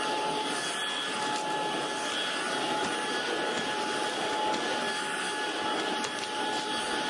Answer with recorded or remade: recorded